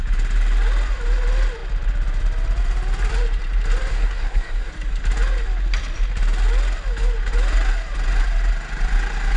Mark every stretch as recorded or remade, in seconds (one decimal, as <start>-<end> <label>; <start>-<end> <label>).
0.0-3.9 recorded; 3.9-4.7 remade; 4.7-9.4 recorded

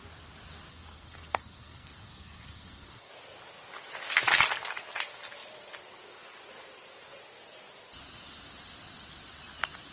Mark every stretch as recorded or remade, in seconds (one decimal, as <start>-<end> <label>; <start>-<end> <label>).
0.0-0.7 recorded; 0.7-3.1 remade; 3.1-9.9 recorded

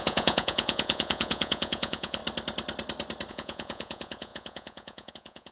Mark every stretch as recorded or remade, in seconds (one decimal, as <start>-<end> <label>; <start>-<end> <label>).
0.0-2.2 remade; 2.2-3.3 recorded; 3.3-5.5 remade